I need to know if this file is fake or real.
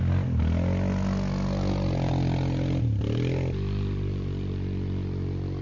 real